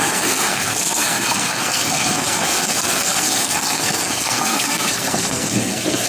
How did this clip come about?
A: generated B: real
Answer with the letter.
A